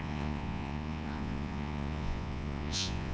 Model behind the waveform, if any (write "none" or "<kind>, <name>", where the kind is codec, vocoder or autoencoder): vocoder, Vocos